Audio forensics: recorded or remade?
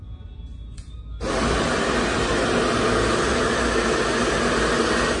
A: recorded